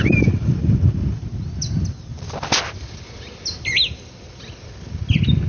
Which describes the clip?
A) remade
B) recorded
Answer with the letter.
B